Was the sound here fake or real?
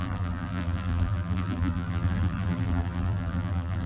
fake